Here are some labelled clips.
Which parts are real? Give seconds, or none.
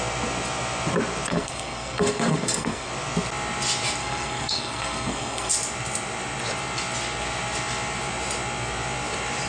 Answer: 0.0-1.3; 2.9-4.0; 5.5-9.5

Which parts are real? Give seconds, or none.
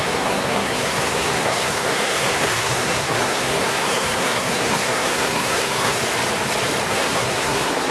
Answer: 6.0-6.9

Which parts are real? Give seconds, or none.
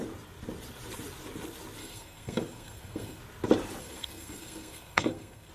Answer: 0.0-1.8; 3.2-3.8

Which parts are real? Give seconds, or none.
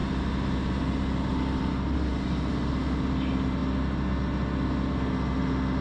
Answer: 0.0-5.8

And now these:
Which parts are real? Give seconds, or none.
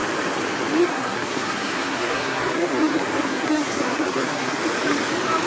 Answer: 0.0-0.8; 4.6-5.5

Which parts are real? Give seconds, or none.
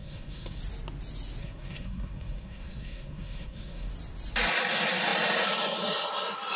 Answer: 0.6-1.4; 3.9-6.6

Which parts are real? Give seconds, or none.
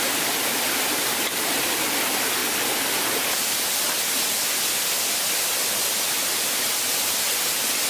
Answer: 0.0-7.9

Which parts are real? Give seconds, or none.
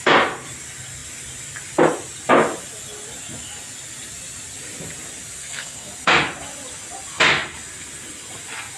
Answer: 0.0-5.4; 5.9-8.8